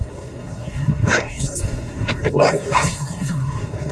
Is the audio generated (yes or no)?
yes